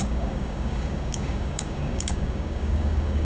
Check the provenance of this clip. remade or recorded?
remade